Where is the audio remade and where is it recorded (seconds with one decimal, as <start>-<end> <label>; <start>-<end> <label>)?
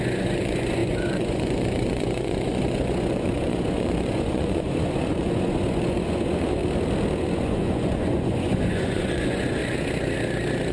0.0-6.6 remade; 6.6-7.2 recorded; 7.2-9.6 remade; 9.6-10.7 recorded